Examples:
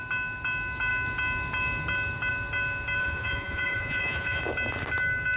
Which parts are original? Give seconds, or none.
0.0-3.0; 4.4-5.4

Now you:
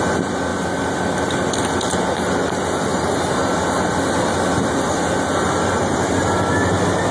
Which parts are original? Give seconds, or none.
0.0-7.1

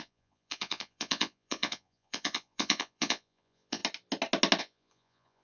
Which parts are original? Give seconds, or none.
3.8-4.6

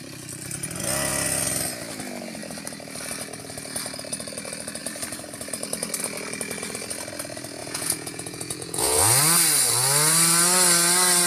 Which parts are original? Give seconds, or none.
0.0-7.6; 9.0-11.3

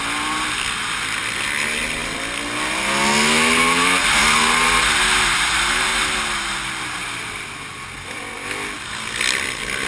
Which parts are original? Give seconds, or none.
0.0-9.9